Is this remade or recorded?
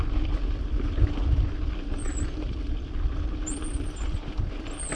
recorded